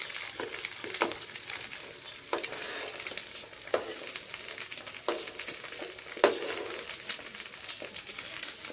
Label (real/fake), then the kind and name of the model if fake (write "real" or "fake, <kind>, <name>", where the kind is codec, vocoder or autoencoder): real